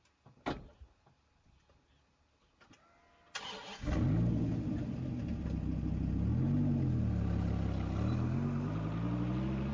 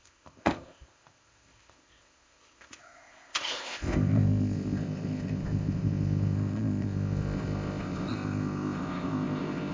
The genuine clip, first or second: first